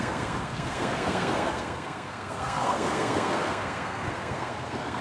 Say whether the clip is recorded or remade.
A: remade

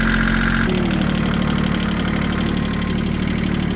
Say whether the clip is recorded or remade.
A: recorded